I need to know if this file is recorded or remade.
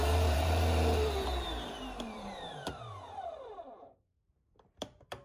remade